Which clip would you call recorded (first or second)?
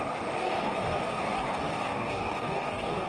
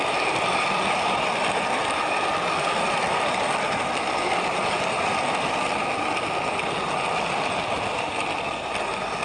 second